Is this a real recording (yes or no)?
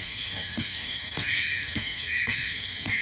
no